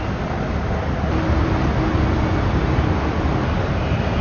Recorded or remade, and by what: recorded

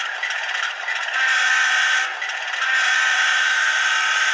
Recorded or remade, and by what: recorded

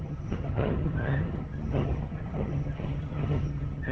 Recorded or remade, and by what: remade, vocoder, HiFi-GAN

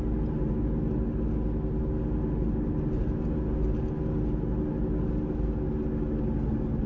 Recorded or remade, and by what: recorded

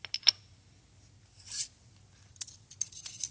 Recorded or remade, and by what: recorded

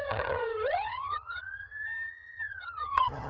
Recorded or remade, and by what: remade, vocoder, HiFi-GAN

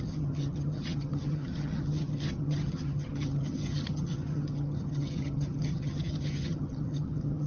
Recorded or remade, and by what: remade, vocoder, HiFi-GAN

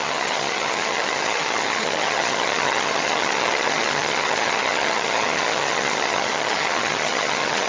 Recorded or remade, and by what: remade, vocoder, HiFi-GAN